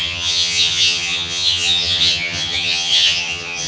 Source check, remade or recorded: remade